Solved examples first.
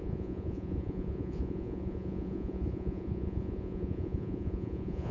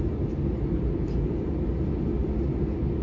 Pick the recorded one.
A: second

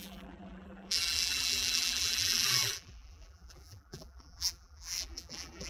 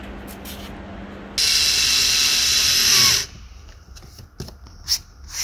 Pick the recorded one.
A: second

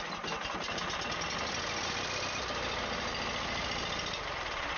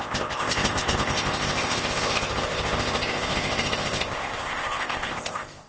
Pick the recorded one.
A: first